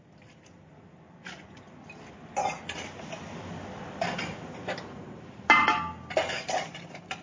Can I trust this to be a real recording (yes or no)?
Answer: yes